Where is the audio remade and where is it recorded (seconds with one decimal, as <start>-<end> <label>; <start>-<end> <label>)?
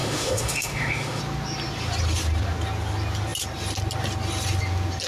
0.0-1.2 remade; 1.2-5.1 recorded